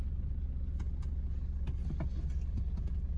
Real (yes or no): yes